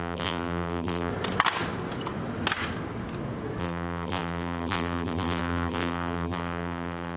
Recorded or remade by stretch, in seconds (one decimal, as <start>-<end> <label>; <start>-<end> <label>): 0.0-1.1 remade; 1.1-3.6 recorded; 3.6-7.2 remade